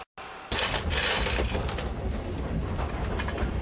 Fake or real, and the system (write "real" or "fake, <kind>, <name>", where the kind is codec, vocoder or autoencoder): real